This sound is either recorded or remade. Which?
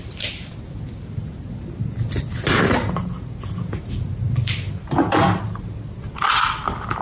recorded